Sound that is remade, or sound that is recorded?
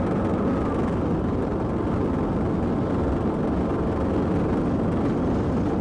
recorded